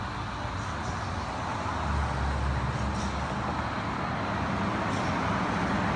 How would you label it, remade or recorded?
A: recorded